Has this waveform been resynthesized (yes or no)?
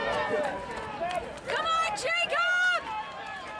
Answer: no